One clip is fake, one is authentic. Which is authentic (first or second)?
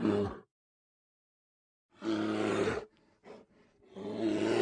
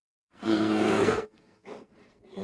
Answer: first